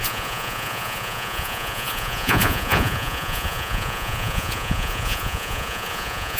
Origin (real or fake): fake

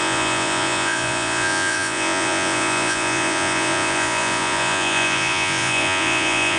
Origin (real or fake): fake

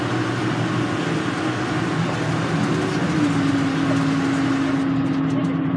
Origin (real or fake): real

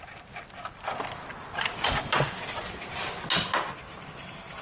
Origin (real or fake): real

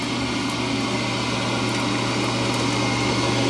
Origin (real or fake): real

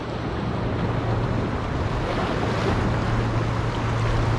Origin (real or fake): real